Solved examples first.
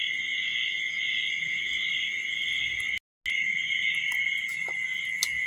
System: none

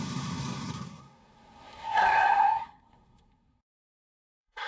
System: codec, SNAC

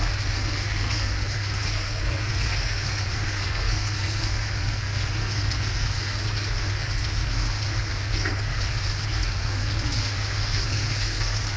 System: codec, SNAC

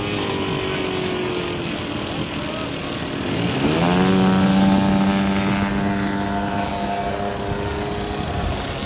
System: none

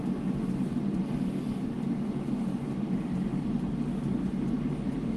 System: none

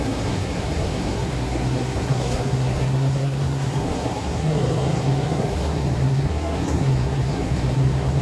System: codec, SNAC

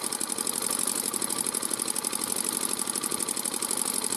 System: none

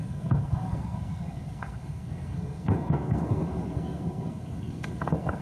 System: codec, SNAC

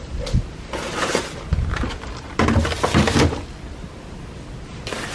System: none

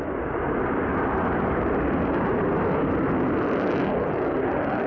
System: none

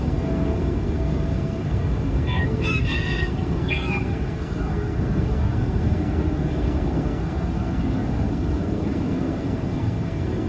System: codec, SNAC